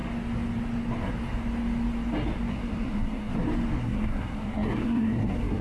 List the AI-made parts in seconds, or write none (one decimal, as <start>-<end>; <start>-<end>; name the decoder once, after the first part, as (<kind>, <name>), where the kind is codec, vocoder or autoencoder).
2.5-3.3 (codec, SNAC); 3.8-5.6